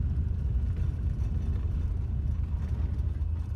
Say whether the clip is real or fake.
real